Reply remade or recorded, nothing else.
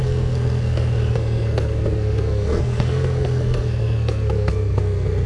remade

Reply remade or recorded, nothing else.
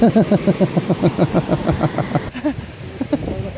recorded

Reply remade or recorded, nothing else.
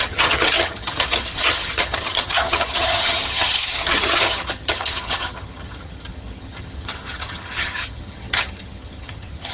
remade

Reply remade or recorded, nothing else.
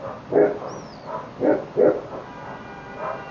recorded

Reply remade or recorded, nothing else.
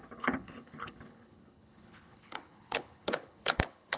remade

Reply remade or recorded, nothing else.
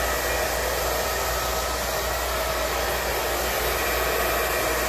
recorded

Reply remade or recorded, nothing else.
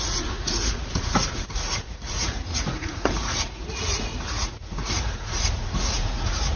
remade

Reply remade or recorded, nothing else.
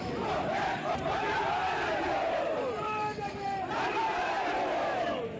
remade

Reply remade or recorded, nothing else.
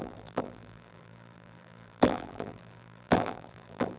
remade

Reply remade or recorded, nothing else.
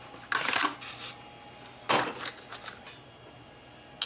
recorded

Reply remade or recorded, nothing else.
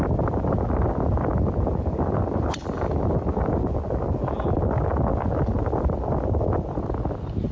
recorded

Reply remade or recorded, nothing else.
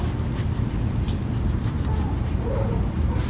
recorded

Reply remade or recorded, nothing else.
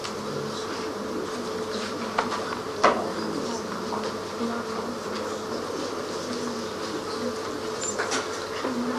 recorded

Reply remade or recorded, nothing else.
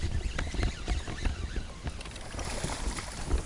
recorded